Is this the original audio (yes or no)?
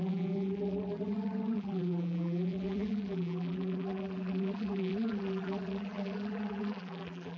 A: no